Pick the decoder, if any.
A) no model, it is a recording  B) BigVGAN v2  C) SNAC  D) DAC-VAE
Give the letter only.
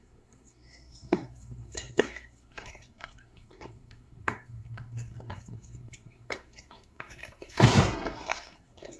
C